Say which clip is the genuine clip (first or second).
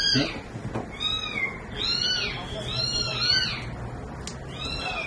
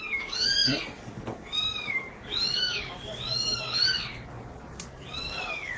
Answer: first